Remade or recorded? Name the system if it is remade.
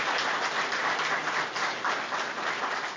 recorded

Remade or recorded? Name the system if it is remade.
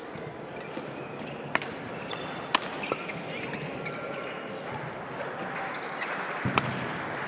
recorded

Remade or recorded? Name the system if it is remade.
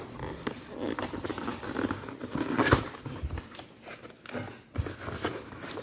recorded